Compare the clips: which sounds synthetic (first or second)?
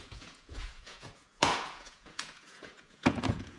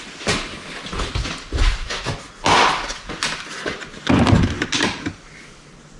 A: first